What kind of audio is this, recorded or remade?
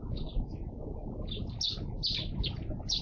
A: recorded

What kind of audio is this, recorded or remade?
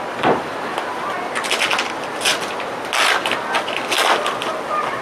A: recorded